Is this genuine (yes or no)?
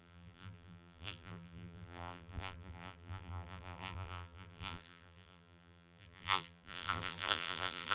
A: no